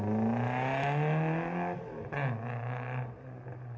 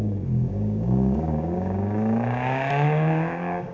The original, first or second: first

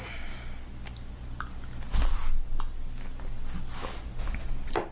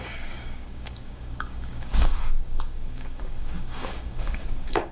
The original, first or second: first